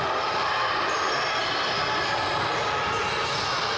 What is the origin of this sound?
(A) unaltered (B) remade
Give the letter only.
A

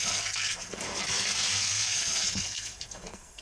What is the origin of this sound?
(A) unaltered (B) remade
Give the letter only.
B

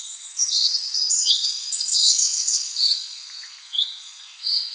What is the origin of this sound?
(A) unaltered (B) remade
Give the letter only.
B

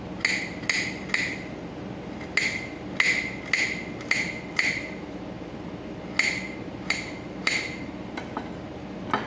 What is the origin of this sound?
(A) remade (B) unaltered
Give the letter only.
B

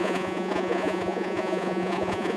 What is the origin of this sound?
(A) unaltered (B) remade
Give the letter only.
B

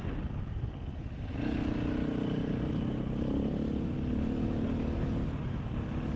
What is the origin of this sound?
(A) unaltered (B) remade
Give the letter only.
A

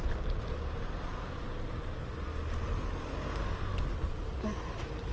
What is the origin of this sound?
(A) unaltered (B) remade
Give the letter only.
A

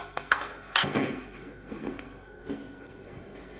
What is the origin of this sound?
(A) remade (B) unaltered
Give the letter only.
A